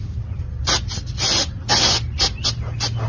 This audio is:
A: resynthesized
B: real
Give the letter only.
B